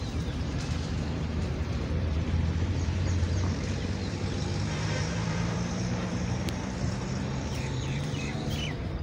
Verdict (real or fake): fake